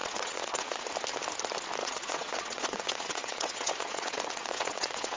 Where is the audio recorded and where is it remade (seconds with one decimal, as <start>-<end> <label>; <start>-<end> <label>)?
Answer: 0.0-0.8 remade; 0.8-1.8 recorded; 1.8-5.2 remade